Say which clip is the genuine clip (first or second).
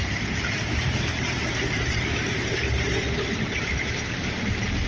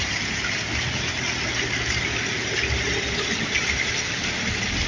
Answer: second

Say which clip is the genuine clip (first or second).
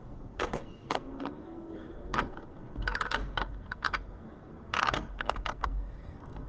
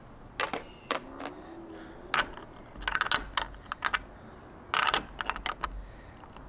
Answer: second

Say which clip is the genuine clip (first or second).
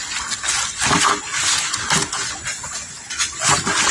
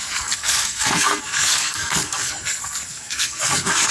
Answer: first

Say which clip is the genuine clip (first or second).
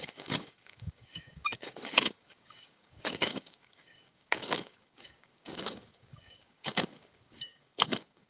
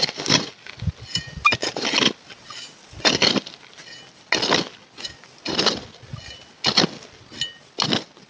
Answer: second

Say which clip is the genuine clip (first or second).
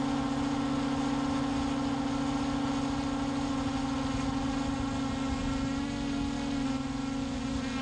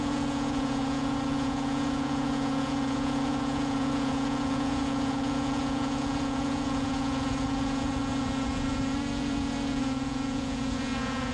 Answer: first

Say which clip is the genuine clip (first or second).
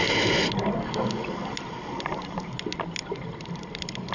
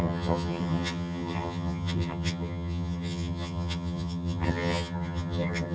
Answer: first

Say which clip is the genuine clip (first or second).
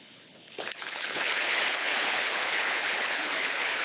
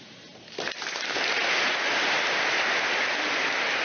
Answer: second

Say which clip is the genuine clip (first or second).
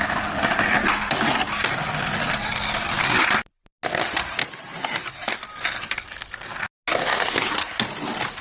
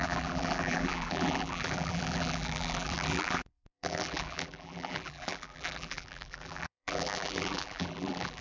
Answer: first